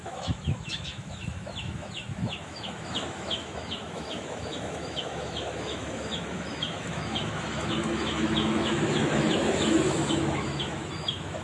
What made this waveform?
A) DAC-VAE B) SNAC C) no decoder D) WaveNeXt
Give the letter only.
A